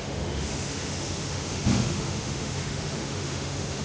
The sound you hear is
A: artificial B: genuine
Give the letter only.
A